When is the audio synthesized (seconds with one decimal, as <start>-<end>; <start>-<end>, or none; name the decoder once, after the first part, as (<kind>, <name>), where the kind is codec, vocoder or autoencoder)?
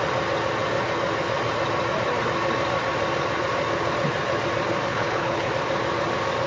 4.9-5.5 (codec, HILCodec)